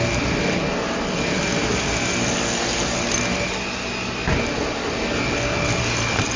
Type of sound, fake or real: real